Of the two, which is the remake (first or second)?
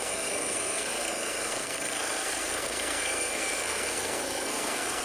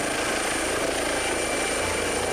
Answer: first